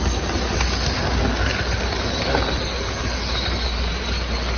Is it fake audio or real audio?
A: real